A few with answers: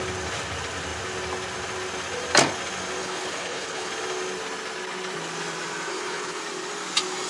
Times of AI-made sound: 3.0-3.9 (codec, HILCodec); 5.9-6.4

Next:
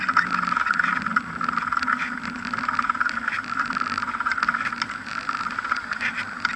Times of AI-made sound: none

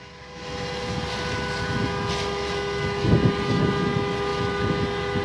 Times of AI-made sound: none

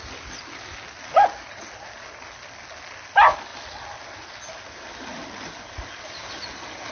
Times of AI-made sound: none

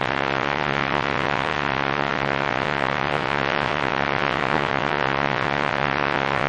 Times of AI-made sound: 0.0-6.5 (vocoder, WaveNeXt)

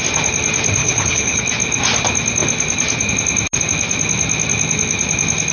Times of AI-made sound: 0.8-1.4 (codec, HILCodec)

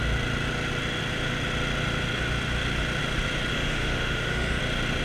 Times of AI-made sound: 3.5-4.6 (autoencoder, DAC-VAE)